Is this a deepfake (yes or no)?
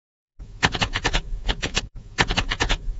yes